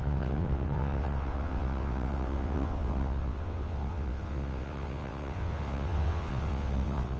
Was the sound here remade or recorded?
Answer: remade